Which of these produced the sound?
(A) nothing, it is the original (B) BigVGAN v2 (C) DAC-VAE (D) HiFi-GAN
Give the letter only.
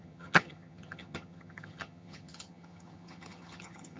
D